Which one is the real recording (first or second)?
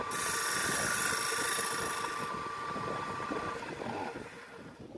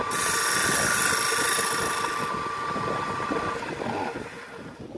second